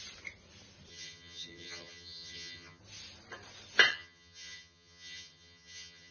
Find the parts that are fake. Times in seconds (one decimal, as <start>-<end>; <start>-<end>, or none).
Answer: 0.9-2.8; 3.9-6.1